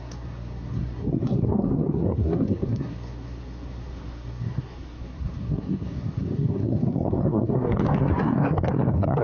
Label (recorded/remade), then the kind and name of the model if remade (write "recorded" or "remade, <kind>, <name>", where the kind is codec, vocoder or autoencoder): remade, codec, SNAC